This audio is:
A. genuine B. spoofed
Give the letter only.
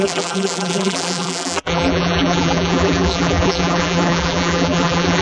B